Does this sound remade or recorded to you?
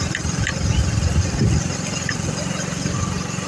recorded